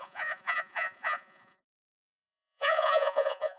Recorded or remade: remade